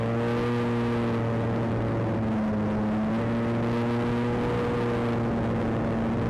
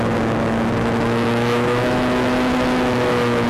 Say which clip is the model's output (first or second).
second